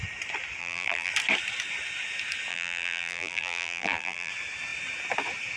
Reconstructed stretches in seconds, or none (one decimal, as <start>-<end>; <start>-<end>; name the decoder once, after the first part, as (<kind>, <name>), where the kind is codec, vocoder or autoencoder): 0.6-1.1 (vocoder, BigVGAN v2); 2.5-4.3